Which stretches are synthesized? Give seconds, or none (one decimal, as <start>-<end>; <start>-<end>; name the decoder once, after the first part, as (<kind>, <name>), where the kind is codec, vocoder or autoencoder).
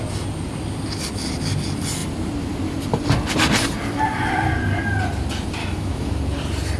5.6-6.1 (autoencoder, DAC-VAE)